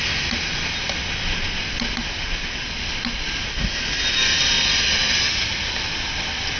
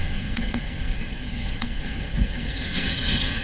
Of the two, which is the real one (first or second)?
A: first